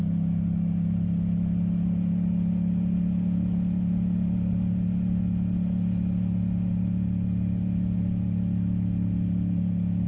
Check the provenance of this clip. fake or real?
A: real